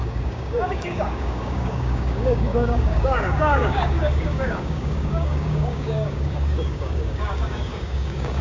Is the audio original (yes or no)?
no